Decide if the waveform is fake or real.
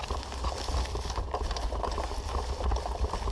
real